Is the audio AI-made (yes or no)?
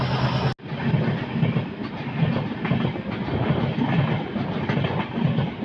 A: no